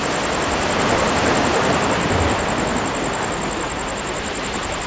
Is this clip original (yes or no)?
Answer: yes